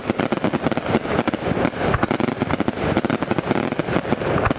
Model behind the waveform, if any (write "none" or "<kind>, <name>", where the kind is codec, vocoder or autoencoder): vocoder, BigVGAN v2